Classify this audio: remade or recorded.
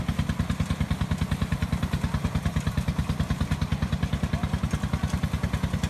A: recorded